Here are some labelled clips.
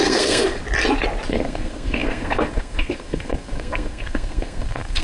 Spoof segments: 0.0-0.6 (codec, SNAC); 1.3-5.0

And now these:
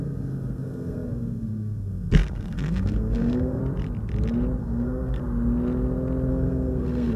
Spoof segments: 0.0-3.6 (codec, SNAC); 4.6-5.2; 6.3-7.2

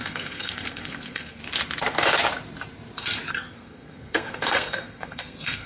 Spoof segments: 0.0-1.4 (codec, SNAC); 3.3-5.7

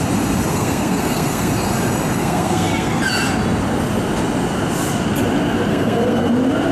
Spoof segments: 0.5-1.5 (codec, SNAC); 2.2-3.0; 5.7-6.3

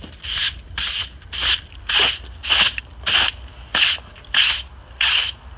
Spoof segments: none

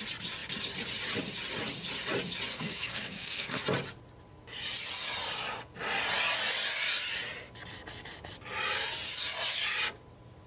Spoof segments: 2.5-3.6 (codec, SNAC)

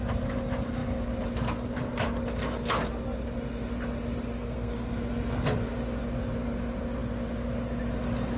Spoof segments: 4.4-5.0 (codec, SNAC)

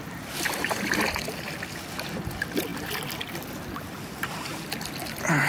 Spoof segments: none